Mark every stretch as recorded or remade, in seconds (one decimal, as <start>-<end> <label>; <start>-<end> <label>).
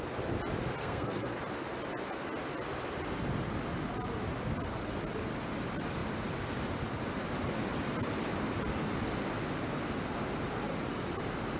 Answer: 0.0-0.8 recorded; 0.8-1.4 remade; 1.4-11.6 recorded